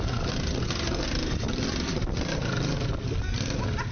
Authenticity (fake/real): real